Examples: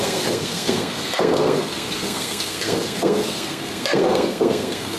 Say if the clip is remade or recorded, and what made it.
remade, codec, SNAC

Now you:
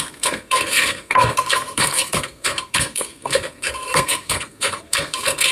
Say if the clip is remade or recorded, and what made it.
remade, codec, SNAC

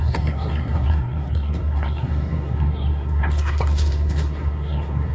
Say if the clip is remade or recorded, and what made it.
remade, codec, SNAC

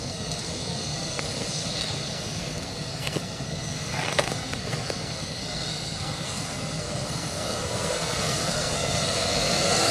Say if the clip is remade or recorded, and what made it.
remade, codec, SNAC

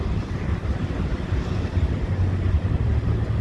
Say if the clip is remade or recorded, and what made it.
recorded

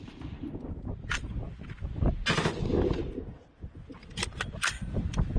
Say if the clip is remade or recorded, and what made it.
recorded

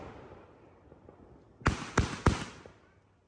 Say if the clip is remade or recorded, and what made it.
recorded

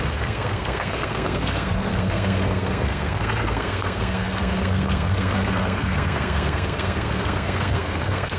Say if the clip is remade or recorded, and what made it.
remade, codec, SNAC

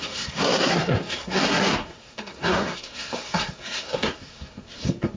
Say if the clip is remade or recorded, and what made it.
remade, codec, SNAC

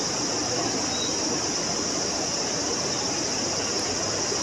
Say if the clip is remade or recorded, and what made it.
recorded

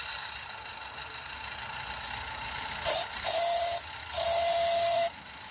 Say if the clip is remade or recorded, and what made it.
recorded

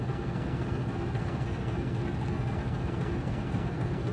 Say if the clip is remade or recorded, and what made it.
remade, codec, SNAC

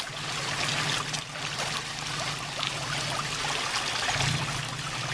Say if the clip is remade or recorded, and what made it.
recorded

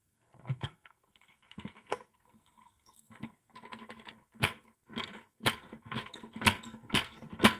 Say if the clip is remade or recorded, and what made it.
remade, codec, SNAC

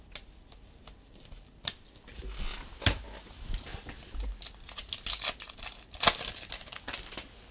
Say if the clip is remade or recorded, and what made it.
recorded